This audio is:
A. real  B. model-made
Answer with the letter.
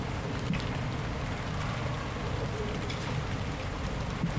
B